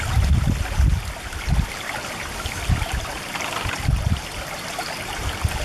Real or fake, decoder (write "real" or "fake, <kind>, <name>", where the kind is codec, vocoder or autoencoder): real